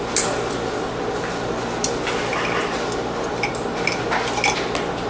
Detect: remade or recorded recorded